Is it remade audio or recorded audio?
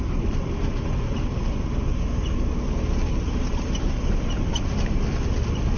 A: recorded